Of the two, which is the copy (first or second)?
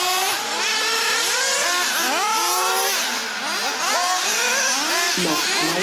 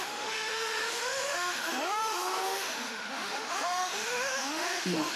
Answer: second